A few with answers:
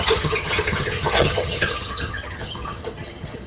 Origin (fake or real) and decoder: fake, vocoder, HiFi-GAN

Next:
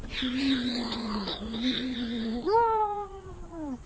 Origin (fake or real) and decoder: fake, vocoder, Vocos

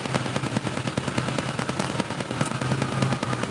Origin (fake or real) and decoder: real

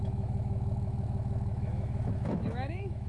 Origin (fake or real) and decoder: fake, autoencoder, DAC-VAE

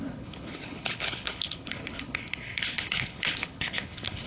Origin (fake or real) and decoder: fake, codec, HILCodec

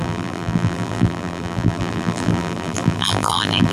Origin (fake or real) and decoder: fake, vocoder, BigVGAN v2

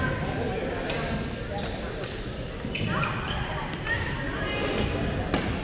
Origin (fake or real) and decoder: real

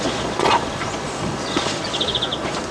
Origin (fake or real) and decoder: fake, vocoder, Vocos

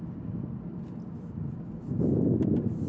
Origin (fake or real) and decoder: real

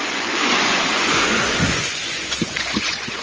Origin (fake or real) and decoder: fake, vocoder, Vocos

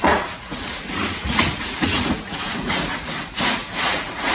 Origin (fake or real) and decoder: fake, vocoder, Vocos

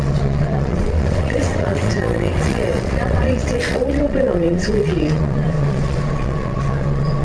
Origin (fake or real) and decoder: fake, vocoder, WaveNeXt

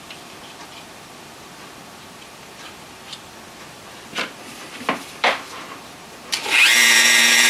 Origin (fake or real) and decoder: fake, vocoder, BigVGAN v2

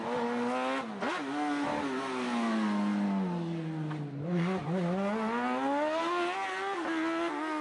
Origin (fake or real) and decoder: real